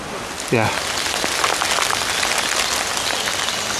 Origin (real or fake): real